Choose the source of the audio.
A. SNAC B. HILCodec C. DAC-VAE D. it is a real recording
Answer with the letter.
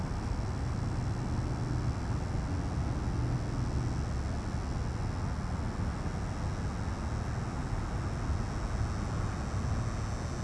D